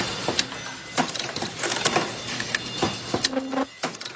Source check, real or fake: real